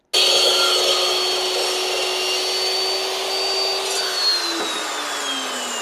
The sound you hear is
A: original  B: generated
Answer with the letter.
A